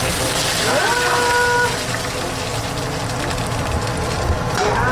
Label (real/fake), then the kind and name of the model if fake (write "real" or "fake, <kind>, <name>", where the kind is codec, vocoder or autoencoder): real